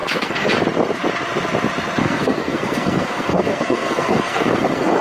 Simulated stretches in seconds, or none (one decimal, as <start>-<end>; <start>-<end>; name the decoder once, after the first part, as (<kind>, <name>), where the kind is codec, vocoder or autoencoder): 0.0-0.5 (codec, SNAC); 2.0-5.0